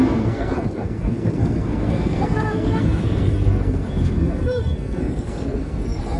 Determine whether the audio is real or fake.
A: fake